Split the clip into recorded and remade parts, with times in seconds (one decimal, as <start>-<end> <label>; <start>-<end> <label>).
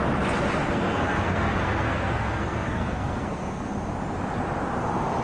0.0-0.6 recorded; 0.6-3.7 remade; 3.7-5.2 recorded